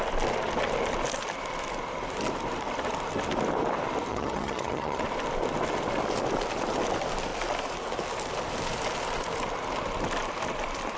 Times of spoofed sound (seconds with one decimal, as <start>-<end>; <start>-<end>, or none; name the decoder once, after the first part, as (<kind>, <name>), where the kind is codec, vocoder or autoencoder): 4.1-5.0 (vocoder, HiFi-GAN)